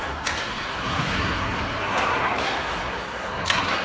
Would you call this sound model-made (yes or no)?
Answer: yes